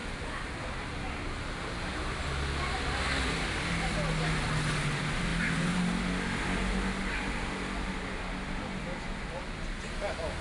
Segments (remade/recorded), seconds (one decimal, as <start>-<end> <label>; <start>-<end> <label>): 0.0-10.4 recorded